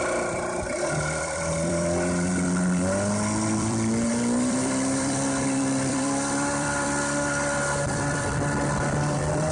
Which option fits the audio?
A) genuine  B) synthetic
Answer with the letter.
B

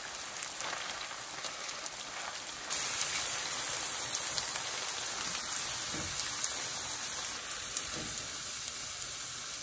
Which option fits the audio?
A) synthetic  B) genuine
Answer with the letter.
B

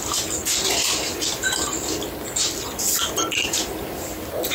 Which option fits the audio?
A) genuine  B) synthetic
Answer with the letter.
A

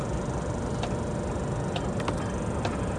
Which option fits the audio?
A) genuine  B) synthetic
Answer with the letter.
A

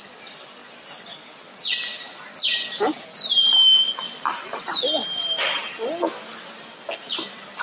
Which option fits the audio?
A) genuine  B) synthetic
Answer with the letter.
A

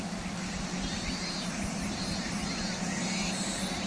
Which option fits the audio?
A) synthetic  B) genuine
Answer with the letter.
B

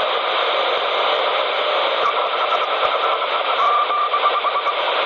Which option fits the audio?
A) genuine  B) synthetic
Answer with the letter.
B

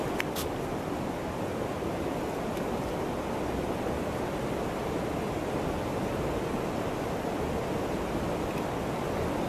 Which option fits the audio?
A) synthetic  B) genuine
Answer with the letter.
B